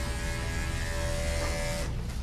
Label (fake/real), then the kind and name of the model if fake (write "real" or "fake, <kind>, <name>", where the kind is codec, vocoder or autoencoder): real